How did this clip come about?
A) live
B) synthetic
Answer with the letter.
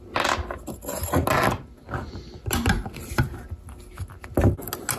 A